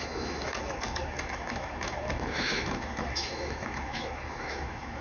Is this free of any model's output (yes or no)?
no